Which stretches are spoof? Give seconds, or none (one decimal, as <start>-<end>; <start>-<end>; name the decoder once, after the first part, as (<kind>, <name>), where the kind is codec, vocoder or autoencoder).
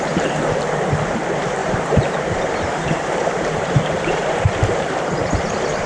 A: 1.6-4.7 (vocoder, BigVGAN v2)